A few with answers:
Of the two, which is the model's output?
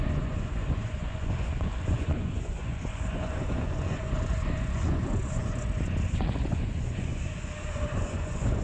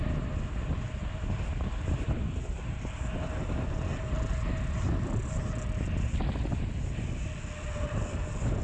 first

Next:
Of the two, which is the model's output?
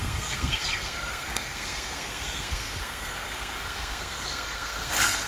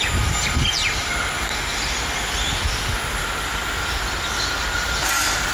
first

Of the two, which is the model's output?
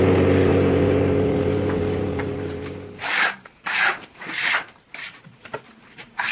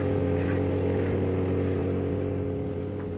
first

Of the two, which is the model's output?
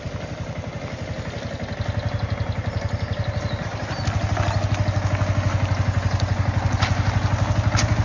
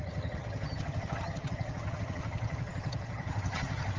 second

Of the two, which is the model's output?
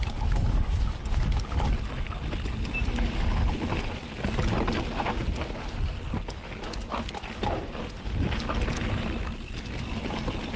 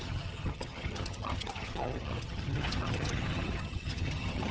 second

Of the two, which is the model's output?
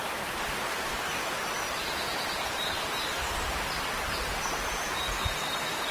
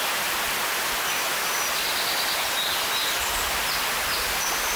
first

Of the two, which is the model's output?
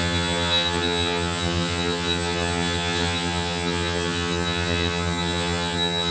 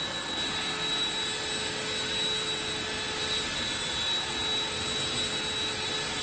first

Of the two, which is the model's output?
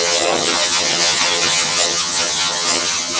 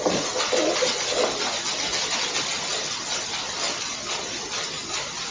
first